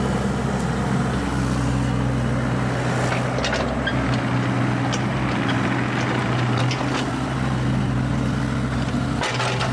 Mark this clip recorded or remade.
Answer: recorded